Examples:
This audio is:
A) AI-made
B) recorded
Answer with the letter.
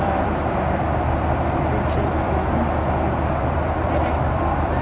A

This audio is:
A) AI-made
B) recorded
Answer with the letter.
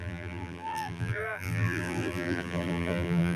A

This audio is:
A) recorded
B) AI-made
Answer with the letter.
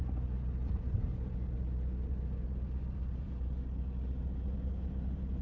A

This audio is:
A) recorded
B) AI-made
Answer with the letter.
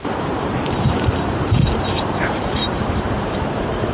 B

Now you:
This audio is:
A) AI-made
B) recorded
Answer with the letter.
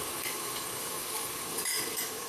A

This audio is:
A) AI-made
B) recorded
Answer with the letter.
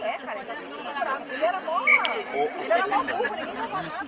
B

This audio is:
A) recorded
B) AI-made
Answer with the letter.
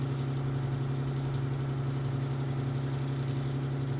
A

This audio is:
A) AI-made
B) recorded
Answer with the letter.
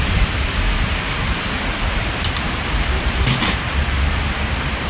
A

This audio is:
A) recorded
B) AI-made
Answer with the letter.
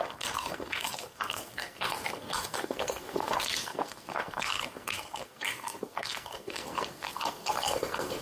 B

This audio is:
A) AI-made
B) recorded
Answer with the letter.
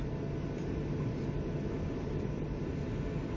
B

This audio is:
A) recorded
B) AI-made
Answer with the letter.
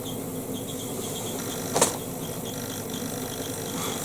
A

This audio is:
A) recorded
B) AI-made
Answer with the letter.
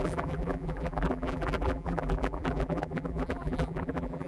B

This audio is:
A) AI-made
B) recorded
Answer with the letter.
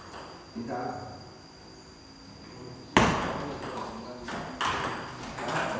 B